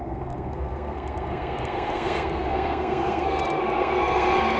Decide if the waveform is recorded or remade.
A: remade